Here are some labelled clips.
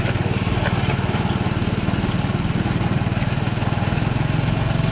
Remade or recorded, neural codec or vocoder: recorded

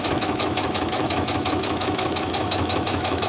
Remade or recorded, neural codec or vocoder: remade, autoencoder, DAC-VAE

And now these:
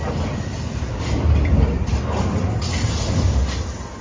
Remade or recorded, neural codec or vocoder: recorded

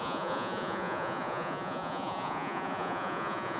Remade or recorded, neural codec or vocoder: remade, vocoder, Vocos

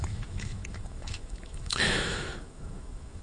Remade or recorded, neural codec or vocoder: remade, autoencoder, DAC-VAE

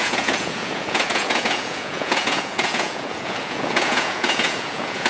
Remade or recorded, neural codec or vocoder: remade, vocoder, Vocos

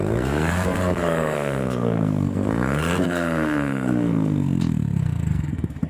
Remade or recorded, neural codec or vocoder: remade, codec, SNAC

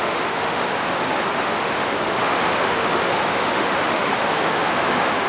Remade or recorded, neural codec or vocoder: remade, autoencoder, DAC-VAE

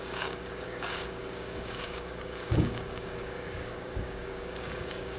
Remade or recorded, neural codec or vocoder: remade, codec, DAC